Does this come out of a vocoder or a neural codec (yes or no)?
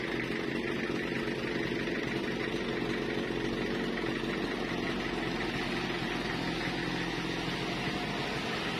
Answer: no